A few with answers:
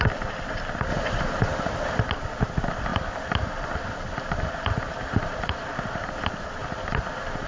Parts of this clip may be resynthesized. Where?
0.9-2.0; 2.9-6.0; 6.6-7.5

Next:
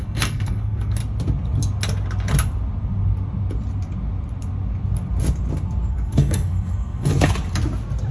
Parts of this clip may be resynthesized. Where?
0.0-1.0; 5.9-7.1